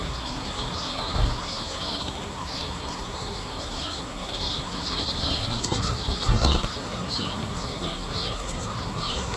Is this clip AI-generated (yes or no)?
yes